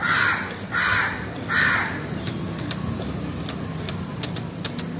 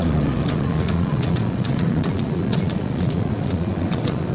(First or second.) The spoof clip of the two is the second